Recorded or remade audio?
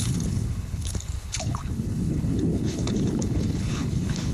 remade